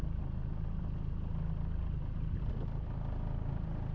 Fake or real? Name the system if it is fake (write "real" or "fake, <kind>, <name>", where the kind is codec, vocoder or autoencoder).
real